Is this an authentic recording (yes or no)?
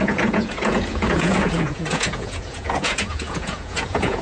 no